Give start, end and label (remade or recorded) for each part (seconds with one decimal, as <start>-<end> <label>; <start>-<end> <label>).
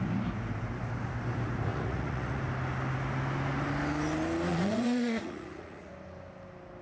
0.0-1.7 recorded; 1.7-2.4 remade; 2.4-4.5 recorded; 4.5-5.9 remade; 5.9-6.8 recorded